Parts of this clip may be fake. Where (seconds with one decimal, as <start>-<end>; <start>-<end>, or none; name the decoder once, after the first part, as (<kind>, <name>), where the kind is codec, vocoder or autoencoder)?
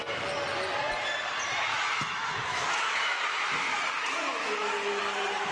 1.7-5.0 (autoencoder, DAC-VAE)